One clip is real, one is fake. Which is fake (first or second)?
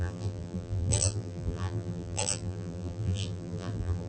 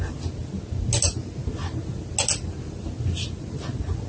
first